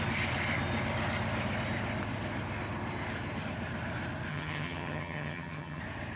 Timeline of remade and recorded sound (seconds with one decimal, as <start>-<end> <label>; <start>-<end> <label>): 0.0-4.3 recorded; 4.3-5.8 remade; 5.8-6.2 recorded